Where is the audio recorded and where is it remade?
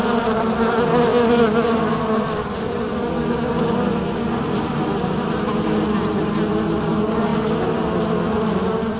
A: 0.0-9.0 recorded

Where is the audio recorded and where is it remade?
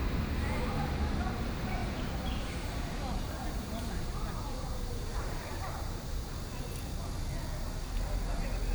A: 0.0-0.6 remade; 0.6-1.8 recorded; 1.8-6.3 remade; 6.3-8.7 recorded